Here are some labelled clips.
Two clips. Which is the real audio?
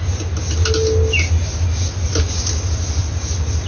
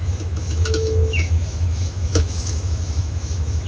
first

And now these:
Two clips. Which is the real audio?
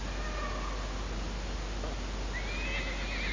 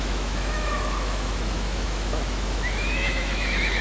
first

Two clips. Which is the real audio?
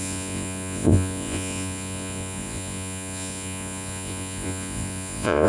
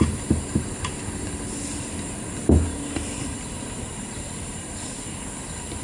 second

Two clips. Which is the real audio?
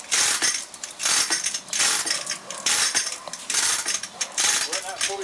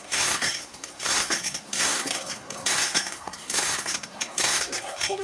first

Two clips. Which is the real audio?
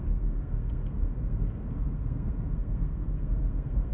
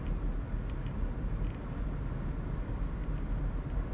second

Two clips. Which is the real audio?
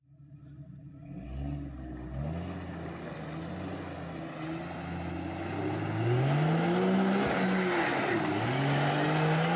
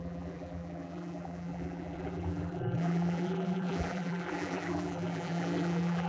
first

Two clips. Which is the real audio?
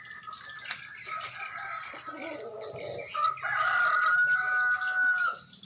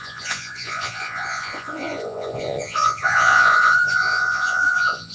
first